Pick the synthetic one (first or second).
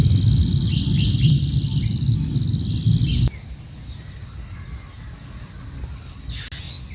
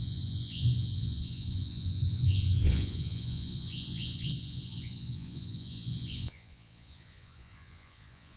second